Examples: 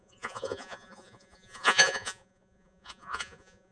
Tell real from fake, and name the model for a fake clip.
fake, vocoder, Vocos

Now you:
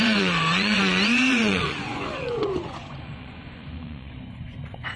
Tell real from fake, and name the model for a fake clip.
fake, vocoder, Vocos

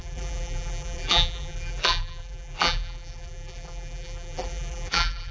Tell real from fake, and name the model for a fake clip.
fake, vocoder, BigVGAN v2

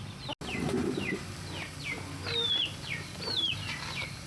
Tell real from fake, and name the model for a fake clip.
real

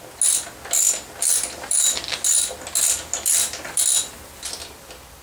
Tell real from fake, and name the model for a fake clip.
real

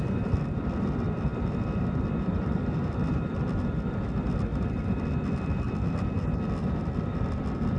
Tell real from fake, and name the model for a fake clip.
fake, vocoder, BigVGAN v2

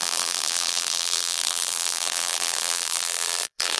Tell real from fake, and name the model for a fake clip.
fake, vocoder, BigVGAN v2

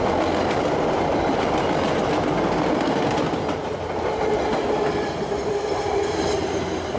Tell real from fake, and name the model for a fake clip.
real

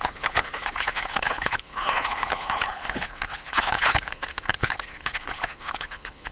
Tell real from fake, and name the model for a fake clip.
fake, codec, HILCodec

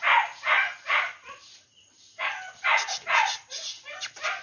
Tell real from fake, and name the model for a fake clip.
real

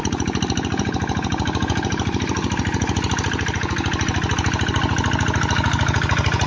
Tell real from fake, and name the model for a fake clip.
real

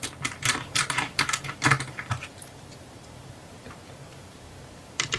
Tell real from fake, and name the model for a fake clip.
fake, vocoder, BigVGAN v2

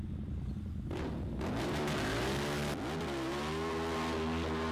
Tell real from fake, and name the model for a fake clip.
real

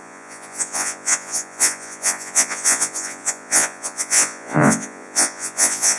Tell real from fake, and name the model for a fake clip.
fake, vocoder, Vocos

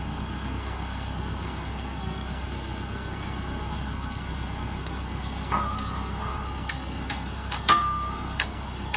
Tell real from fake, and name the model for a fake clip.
fake, codec, SNAC